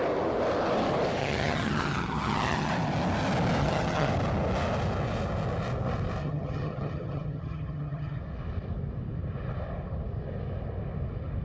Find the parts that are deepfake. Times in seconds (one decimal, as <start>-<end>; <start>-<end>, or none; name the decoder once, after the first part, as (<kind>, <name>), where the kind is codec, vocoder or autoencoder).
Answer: 1.2-2.7 (vocoder, HiFi-GAN); 3.6-4.1; 6.2-8.2